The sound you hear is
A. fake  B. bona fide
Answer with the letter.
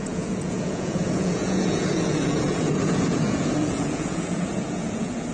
A